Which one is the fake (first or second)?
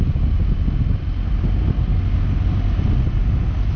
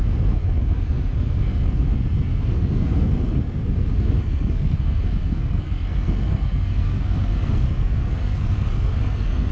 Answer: second